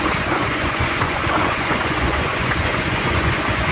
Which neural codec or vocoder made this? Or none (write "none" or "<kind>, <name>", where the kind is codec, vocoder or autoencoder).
vocoder, Vocos